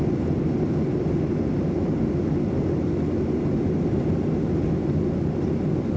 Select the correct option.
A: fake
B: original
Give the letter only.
B